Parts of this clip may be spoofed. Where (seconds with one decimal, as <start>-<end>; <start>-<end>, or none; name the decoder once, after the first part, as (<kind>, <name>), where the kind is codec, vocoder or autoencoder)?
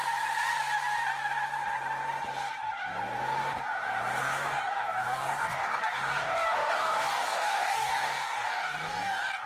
4.2-9.5 (codec, DAC)